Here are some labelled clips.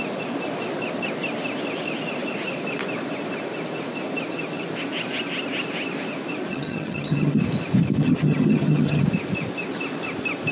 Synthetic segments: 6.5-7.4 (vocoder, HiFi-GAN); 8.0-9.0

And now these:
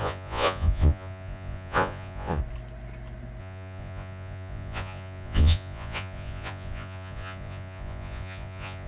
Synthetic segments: 0.0-2.4 (vocoder, Vocos); 3.4-8.9